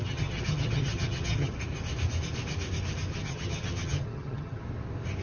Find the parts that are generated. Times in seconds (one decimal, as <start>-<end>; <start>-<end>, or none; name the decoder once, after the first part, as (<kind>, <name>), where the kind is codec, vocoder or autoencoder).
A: 0.0-1.5 (vocoder, HiFi-GAN); 3.1-4.6